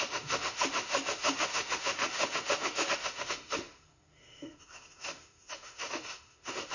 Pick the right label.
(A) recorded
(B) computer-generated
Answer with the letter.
B